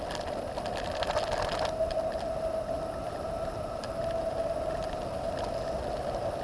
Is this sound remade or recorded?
recorded